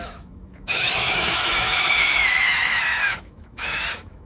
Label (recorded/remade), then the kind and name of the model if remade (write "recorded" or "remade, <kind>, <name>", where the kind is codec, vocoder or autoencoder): remade, autoencoder, DAC-VAE